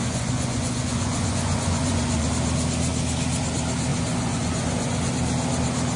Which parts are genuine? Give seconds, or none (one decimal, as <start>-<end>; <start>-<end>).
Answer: 2.3-3.9; 5.1-6.0

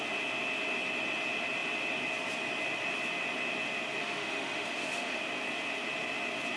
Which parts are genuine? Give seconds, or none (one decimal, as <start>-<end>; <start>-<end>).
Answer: 0.0-4.0; 5.2-6.6

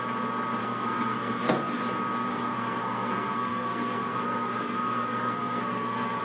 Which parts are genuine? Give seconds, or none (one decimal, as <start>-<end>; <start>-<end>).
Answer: 0.0-0.6; 1.8-2.3

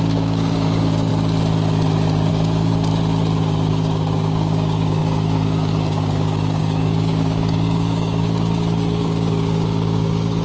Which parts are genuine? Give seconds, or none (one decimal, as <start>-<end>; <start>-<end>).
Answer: 1.1-2.3; 2.9-3.7

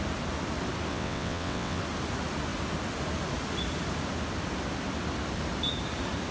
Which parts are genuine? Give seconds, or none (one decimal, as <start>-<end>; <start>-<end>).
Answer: 0.0-0.9; 1.8-6.3

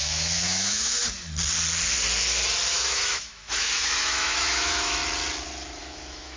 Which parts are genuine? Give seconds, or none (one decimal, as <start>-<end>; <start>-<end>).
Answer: 1.0-2.7; 5.0-5.8

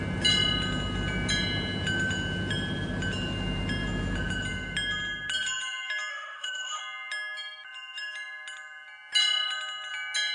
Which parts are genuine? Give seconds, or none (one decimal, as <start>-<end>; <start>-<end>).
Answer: 0.0-6.1; 6.8-10.3